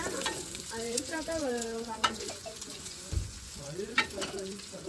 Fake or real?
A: fake